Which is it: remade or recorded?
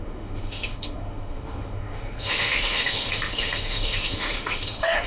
remade